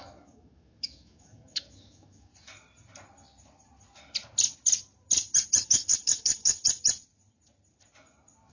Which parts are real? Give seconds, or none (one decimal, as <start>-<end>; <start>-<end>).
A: 2.3-5.6; 6.6-8.5